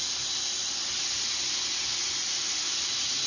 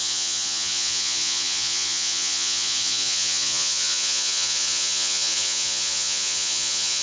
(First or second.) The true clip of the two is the first